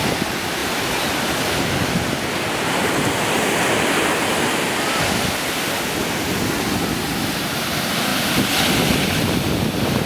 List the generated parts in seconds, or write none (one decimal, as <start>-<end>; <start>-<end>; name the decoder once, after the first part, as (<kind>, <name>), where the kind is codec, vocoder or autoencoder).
none